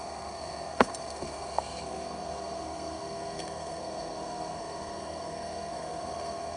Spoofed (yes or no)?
yes